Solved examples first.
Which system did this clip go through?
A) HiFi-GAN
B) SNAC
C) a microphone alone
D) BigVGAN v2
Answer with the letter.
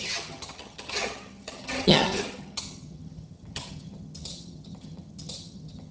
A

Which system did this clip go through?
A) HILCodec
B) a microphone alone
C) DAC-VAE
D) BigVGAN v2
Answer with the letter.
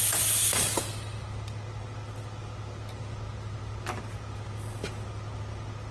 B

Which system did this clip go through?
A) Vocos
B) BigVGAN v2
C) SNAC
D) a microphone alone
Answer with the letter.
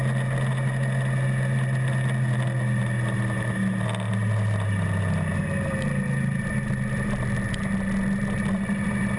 D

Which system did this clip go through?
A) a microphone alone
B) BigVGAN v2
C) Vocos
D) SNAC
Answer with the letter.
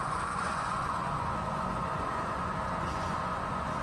C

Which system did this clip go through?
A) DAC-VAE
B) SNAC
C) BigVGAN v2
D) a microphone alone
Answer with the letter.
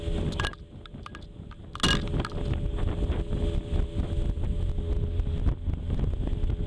D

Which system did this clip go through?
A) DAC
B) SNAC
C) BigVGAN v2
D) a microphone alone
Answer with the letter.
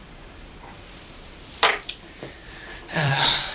C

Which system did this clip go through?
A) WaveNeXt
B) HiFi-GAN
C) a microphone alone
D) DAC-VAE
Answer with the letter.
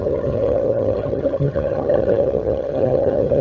B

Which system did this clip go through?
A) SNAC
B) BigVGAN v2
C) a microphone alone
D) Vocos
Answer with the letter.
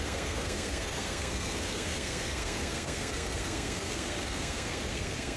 A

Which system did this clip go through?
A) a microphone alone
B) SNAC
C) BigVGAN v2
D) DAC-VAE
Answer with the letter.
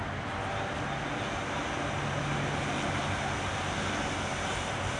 A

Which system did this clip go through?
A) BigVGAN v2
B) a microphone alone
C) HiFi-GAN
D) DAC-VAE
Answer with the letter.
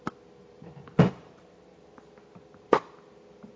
A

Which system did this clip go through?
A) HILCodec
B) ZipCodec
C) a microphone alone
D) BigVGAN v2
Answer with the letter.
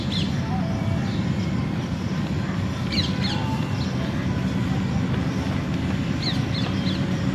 C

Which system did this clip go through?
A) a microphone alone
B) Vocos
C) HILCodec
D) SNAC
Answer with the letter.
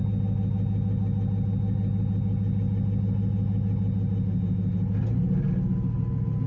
A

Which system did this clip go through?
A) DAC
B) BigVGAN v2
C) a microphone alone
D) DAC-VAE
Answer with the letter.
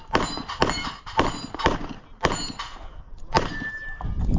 C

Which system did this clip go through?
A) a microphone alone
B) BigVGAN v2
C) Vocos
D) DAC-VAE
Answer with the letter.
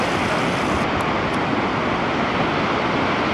A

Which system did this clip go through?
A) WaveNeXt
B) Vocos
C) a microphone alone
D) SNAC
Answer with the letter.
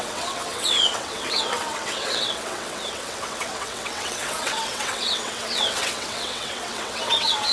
A